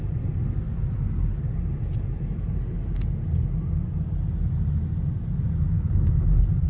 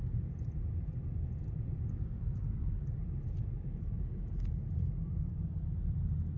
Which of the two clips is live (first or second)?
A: first